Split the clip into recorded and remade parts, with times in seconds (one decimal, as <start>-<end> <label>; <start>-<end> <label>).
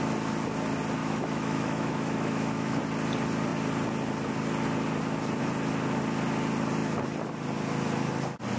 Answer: 0.0-1.0 recorded; 1.0-2.8 remade; 2.8-8.6 recorded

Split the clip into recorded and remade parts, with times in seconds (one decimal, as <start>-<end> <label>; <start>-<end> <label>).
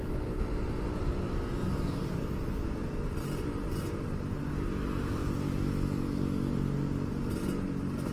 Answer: 0.0-8.1 recorded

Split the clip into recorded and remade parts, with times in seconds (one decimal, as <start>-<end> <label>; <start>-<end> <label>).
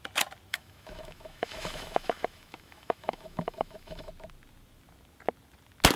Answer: 0.0-0.5 recorded; 0.5-4.1 remade; 4.1-6.0 recorded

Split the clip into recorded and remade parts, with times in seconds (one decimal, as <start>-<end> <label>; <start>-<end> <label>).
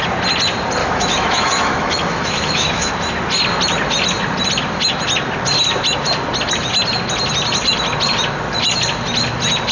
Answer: 0.0-0.8 recorded; 0.8-2.9 remade; 2.9-9.7 recorded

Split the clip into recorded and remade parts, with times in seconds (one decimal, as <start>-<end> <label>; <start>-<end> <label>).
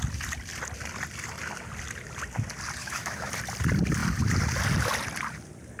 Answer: 0.0-2.8 recorded; 2.8-3.3 remade; 3.3-5.8 recorded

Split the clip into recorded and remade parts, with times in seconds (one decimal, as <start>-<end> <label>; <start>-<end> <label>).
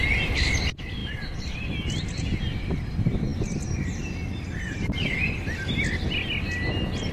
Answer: 0.0-7.1 recorded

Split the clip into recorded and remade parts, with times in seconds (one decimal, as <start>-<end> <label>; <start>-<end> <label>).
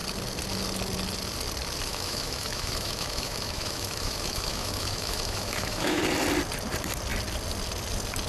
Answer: 0.0-1.9 recorded; 1.9-6.0 remade; 6.0-8.3 recorded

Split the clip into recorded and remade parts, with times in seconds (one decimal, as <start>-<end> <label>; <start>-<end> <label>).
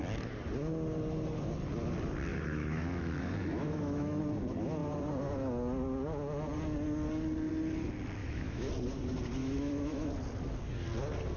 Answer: 0.0-2.3 recorded; 2.3-4.2 remade; 4.2-8.2 recorded; 8.2-8.7 remade; 8.7-9.4 recorded; 9.4-10.1 remade; 10.1-11.4 recorded